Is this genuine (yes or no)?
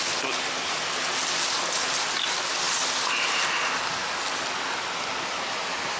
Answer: yes